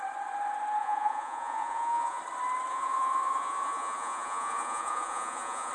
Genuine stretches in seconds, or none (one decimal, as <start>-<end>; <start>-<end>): 0.0-0.8; 2.2-2.7